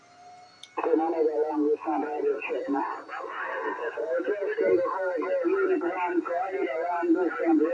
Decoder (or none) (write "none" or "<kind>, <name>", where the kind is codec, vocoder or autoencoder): none